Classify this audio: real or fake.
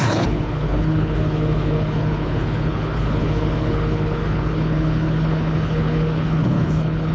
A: fake